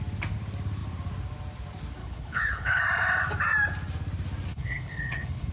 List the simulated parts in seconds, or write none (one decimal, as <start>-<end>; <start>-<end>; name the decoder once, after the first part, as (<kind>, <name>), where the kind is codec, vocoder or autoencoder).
2.0-2.8 (codec, HILCodec); 4.5-5.5